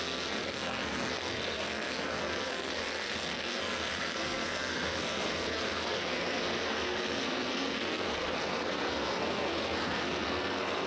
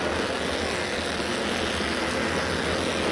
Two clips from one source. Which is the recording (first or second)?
second